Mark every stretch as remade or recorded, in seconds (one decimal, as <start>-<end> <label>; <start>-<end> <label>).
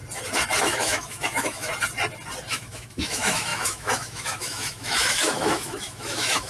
0.0-0.6 recorded; 0.6-1.7 remade; 1.7-2.5 recorded; 2.5-6.5 remade